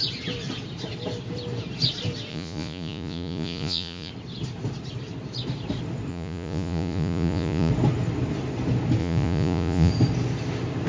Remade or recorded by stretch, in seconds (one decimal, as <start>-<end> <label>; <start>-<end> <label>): 0.0-2.3 recorded; 2.3-4.1 remade; 4.1-6.1 recorded; 6.1-7.7 remade; 7.7-9.0 recorded; 9.0-9.9 remade; 9.9-10.9 recorded

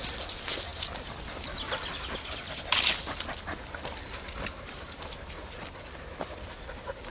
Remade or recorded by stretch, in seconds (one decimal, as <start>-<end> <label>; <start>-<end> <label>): 0.0-7.1 recorded

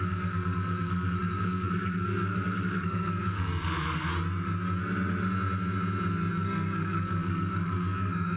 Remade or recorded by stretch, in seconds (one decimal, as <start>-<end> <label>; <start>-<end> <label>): 0.0-4.1 remade; 4.1-6.3 recorded; 6.3-8.4 remade

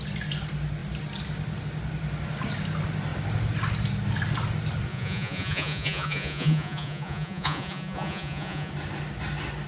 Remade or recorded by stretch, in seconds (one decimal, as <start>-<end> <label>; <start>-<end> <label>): 0.0-4.9 recorded; 4.9-8.7 remade; 8.7-9.7 recorded

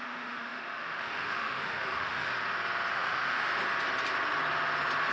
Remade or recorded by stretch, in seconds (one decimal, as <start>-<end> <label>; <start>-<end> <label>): 0.0-2.3 remade; 2.3-2.9 recorded; 2.9-3.5 remade; 3.5-5.1 recorded